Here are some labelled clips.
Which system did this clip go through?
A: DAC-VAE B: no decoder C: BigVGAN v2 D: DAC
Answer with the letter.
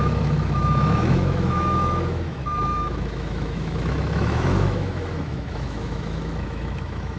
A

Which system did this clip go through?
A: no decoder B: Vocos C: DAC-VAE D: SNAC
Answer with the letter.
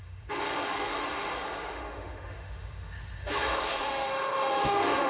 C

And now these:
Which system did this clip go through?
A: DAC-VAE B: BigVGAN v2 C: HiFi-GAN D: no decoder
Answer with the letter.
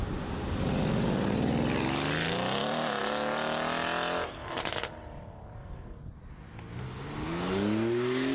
D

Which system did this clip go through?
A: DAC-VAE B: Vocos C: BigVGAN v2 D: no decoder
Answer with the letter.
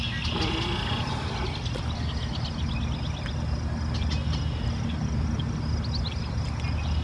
D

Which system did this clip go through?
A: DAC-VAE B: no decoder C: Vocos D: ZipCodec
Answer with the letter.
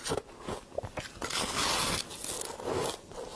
B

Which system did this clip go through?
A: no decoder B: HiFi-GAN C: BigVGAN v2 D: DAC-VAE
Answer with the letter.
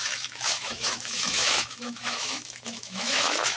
D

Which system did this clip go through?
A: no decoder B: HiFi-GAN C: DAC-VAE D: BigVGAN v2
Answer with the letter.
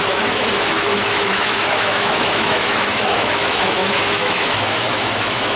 C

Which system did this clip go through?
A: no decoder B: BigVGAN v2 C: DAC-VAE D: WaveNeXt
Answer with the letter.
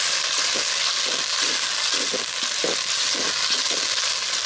A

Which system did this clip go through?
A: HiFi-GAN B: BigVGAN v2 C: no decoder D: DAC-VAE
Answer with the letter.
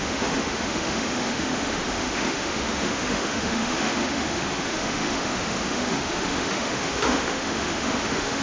D